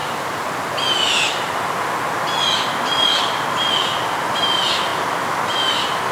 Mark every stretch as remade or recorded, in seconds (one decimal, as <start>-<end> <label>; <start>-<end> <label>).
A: 0.0-6.1 recorded